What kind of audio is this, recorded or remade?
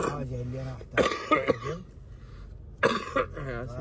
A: recorded